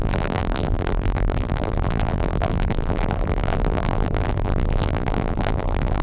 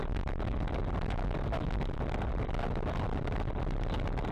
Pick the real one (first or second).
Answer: second